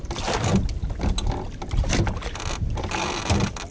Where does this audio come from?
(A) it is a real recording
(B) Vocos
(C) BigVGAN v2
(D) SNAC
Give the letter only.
A